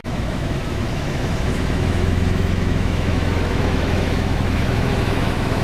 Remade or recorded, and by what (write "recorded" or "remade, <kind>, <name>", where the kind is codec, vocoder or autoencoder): remade, autoencoder, DAC-VAE